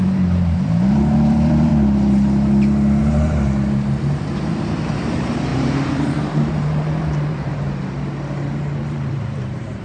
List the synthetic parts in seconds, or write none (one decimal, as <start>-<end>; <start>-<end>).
0.0-1.7; 3.0-7.5; 8.8-9.8